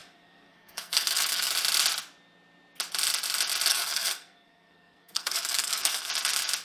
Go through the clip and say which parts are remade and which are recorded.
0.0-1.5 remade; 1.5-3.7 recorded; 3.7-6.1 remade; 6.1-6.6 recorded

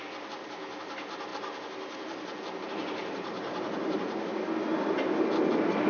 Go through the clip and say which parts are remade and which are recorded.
0.0-5.9 recorded

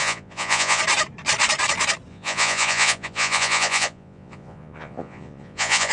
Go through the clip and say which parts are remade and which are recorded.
0.0-0.8 remade; 0.8-2.1 recorded; 2.1-5.9 remade

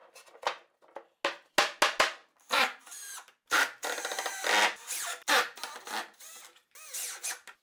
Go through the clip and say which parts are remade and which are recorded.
0.0-2.2 recorded; 2.2-6.4 remade; 6.4-7.6 recorded

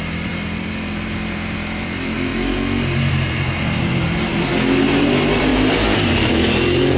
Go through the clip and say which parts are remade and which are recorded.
0.0-2.3 remade; 2.3-3.1 recorded; 3.1-4.5 remade; 4.5-5.0 recorded; 5.0-5.5 remade; 5.5-6.3 recorded; 6.3-7.0 remade

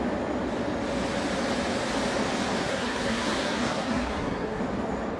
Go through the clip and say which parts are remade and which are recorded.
0.0-2.6 recorded; 2.6-4.6 remade; 4.6-5.2 recorded

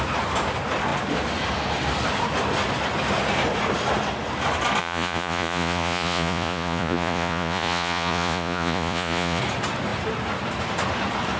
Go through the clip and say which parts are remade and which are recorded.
0.0-4.8 recorded; 4.8-9.4 remade; 9.4-11.4 recorded

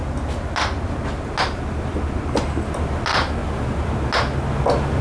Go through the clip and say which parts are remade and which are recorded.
0.0-5.0 recorded